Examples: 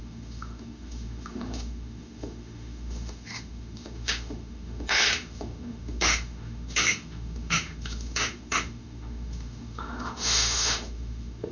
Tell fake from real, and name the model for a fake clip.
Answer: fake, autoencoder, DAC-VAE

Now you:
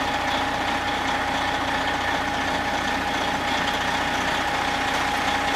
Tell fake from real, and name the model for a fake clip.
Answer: real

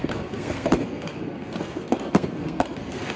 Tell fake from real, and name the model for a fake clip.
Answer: fake, codec, SNAC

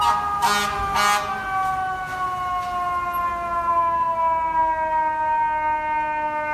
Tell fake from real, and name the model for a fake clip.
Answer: real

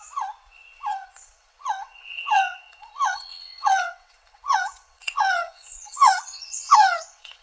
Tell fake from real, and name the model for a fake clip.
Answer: fake, vocoder, WaveNeXt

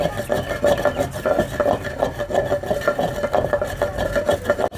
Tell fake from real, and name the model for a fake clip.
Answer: real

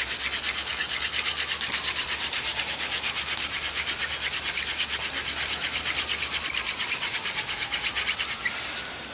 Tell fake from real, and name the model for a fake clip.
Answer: real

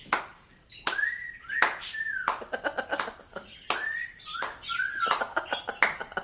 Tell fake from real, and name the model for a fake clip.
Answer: real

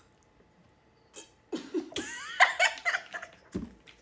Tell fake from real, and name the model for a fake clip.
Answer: real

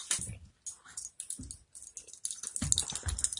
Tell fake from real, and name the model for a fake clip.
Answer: real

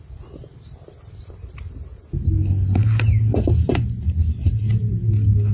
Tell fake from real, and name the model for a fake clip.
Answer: real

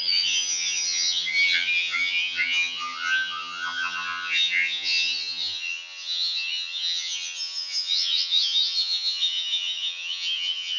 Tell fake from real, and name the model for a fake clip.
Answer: fake, vocoder, HiFi-GAN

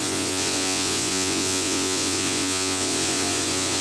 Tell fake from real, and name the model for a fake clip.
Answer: fake, vocoder, Vocos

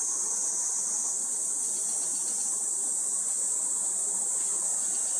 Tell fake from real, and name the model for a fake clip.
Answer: real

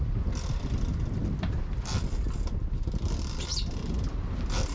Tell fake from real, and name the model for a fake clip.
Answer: real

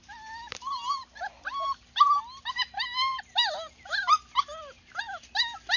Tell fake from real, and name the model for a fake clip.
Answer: real